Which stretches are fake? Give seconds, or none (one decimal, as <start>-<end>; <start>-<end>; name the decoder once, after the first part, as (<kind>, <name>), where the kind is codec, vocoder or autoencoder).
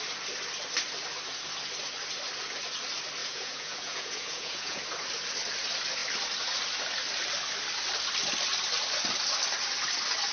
3.2-4.8 (vocoder, Vocos)